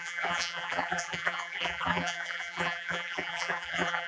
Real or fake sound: fake